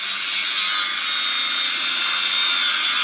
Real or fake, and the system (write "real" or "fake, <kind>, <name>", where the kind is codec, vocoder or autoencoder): real